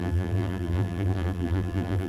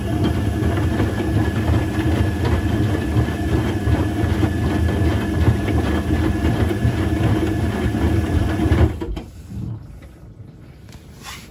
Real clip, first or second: second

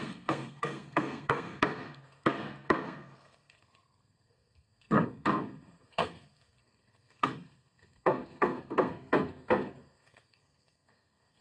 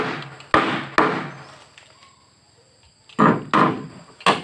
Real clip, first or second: second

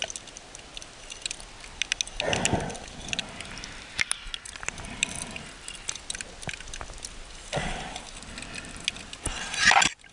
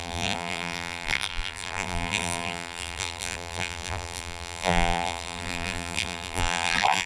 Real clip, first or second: first